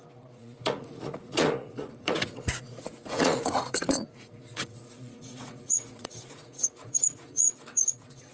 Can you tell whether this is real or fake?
fake